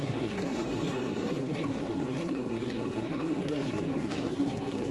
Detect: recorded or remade remade